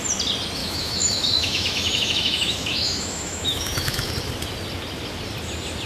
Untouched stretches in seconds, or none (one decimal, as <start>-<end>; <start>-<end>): 0.0-0.6; 4.1-5.9

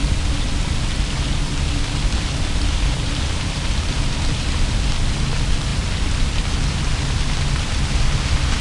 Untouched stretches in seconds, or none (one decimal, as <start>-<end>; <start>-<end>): 0.0-8.6

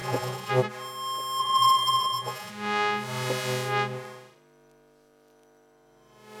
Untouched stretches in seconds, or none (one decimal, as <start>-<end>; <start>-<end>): 0.5-1.4; 2.5-6.4

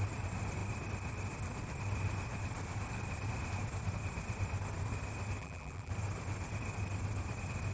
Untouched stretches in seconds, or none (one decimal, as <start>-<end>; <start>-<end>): 0.0-5.4; 5.9-7.7

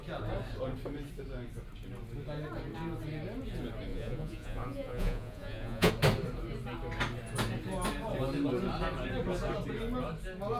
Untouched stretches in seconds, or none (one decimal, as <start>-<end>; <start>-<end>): 0.0-3.9; 5.9-10.6

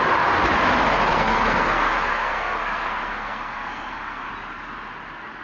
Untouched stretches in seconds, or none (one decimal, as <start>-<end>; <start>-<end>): 0.0-1.1; 4.3-5.4